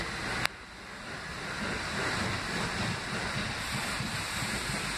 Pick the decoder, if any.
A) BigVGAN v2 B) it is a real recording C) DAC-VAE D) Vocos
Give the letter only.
B